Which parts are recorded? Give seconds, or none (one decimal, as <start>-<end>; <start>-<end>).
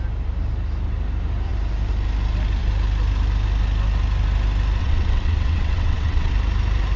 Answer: 0.0-4.8; 6.3-7.0